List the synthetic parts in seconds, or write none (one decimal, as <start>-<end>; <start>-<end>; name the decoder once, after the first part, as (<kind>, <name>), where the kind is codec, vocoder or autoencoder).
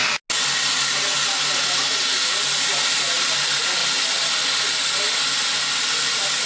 none